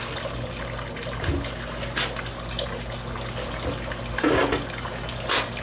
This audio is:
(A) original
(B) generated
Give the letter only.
A